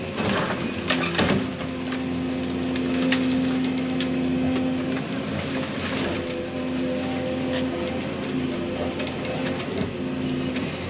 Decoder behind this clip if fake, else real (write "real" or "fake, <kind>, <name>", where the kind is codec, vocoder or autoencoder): real